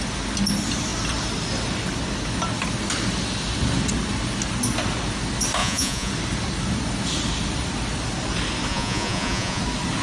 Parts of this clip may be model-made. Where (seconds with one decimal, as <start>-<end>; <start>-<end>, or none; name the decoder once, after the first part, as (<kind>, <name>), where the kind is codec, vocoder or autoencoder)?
5.6-6.1 (vocoder, Vocos); 8.7-9.6